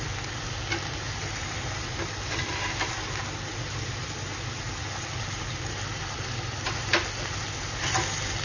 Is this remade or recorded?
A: recorded